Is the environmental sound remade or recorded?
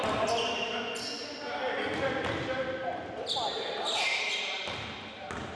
recorded